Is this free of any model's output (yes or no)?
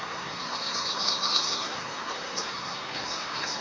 no